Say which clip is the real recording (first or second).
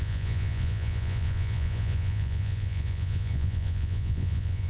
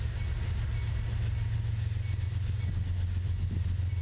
second